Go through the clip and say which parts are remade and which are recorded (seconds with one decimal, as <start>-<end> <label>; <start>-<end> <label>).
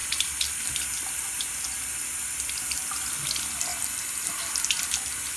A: 0.0-1.4 remade; 1.4-5.4 recorded